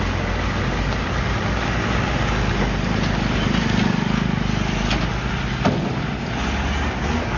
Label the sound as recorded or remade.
recorded